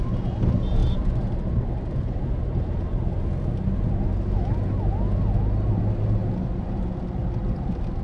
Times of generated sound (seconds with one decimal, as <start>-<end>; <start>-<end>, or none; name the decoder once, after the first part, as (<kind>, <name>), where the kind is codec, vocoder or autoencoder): 0.8-3.1 (vocoder, BigVGAN v2)